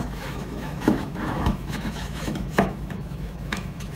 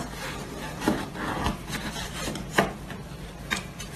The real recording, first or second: second